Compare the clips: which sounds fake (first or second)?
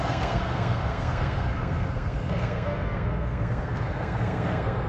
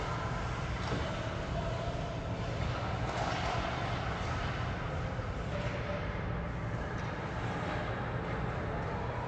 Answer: first